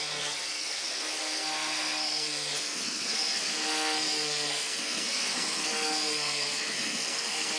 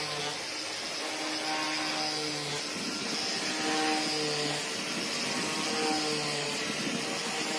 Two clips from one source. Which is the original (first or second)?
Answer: second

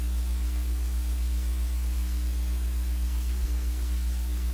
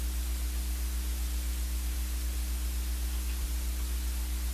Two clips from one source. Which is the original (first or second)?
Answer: second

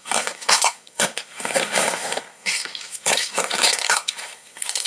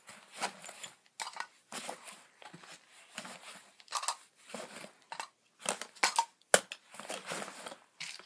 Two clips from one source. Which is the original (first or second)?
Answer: second